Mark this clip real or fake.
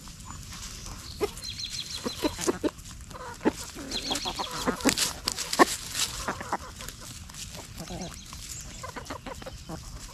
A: real